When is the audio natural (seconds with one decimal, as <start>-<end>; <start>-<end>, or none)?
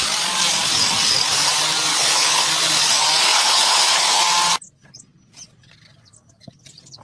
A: 0.0-1.9; 2.5-3.2; 4.2-7.0